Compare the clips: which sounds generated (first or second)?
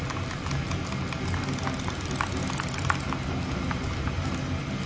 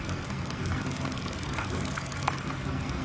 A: second